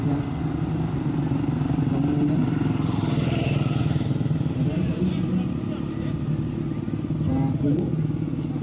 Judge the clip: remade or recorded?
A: recorded